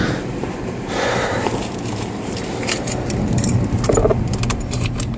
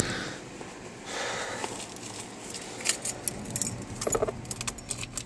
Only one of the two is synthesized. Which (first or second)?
first